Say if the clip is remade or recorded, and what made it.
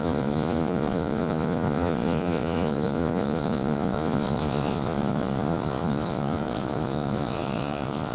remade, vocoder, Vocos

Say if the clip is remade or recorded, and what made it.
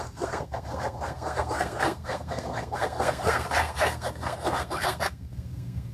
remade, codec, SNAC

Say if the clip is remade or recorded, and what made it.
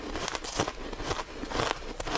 recorded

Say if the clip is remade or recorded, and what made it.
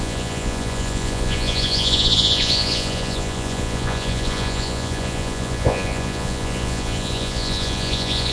remade, vocoder, Vocos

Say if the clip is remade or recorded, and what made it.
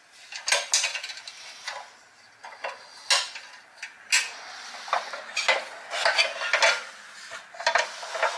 recorded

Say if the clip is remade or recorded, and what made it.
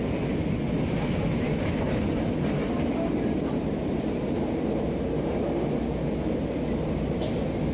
recorded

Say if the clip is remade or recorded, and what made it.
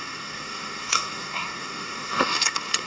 remade, codec, SNAC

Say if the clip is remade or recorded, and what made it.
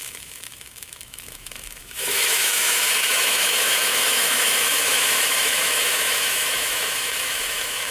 remade, autoencoder, DAC-VAE